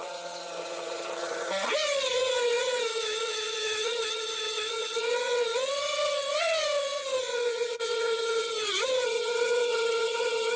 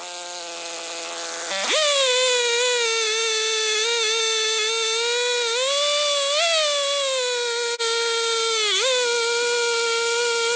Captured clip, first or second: second